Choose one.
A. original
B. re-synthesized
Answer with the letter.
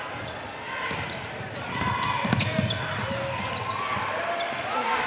A